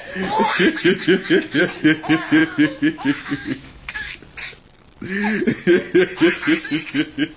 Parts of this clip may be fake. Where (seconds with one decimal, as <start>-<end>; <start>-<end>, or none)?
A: 1.0-1.6; 2.4-4.1